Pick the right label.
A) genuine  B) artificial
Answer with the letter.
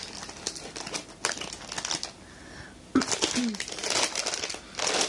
A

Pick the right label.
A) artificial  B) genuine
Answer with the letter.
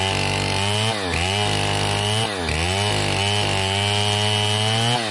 B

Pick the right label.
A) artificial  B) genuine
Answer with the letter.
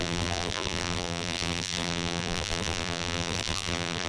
A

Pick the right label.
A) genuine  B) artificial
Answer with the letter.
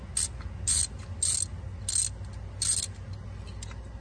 A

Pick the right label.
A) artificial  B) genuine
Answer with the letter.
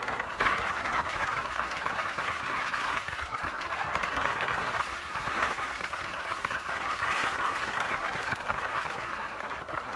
A